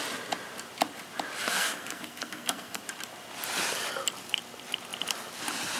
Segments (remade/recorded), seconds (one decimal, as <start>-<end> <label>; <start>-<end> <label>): 0.0-1.4 recorded; 1.4-2.8 remade; 2.8-5.8 recorded